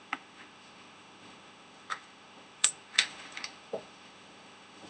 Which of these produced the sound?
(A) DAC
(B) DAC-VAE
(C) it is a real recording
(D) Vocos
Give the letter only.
B